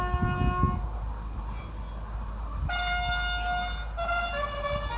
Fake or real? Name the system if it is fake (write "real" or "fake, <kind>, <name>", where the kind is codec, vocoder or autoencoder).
real